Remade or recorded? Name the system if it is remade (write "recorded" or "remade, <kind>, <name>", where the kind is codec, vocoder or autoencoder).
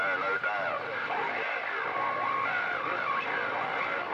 recorded